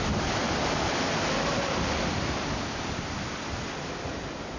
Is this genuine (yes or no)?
yes